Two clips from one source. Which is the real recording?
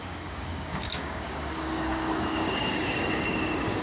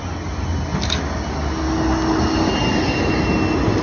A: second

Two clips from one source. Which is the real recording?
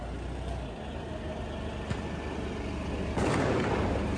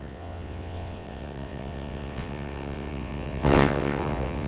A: first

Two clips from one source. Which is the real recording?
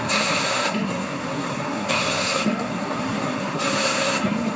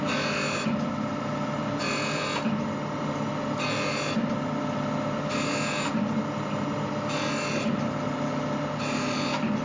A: second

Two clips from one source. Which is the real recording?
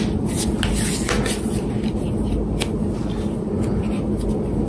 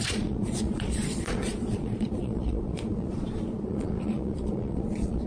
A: first